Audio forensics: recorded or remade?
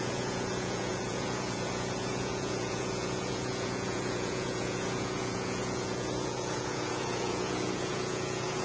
remade